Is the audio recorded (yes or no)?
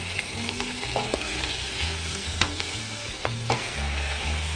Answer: no